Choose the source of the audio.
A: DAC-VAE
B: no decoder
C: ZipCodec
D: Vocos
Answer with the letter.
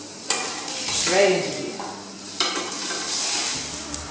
B